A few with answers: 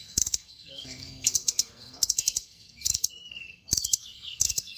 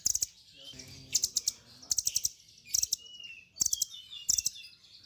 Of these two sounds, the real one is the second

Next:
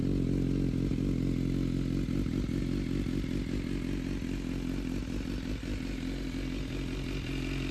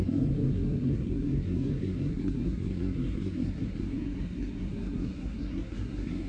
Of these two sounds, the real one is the first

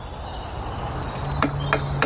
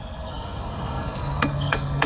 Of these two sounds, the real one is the first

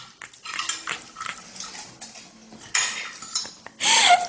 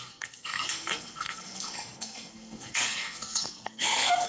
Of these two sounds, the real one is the first